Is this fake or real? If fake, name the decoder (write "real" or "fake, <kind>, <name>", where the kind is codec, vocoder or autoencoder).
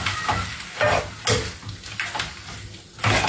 real